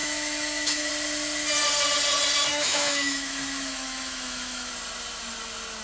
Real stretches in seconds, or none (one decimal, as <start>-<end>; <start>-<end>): 0.9-2.5; 4.7-5.8